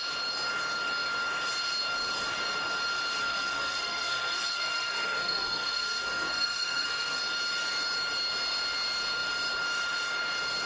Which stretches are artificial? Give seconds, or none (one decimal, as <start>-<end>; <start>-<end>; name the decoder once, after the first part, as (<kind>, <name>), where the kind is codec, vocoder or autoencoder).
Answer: 3.2-7.2 (codec, SNAC)

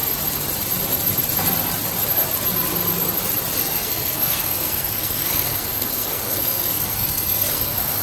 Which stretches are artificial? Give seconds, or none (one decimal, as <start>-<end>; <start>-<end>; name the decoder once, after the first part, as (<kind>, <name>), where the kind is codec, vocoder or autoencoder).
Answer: 3.6-8.0 (codec, SNAC)

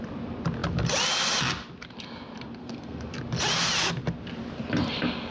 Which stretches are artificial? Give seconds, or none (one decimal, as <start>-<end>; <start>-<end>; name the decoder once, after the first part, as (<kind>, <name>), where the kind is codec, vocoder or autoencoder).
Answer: 2.6-3.2 (codec, SNAC)

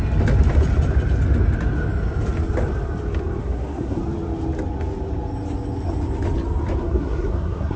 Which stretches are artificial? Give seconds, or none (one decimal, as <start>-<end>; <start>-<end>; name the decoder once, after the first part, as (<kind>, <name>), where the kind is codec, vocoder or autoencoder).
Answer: 3.4-4.0 (codec, SNAC); 6.8-7.8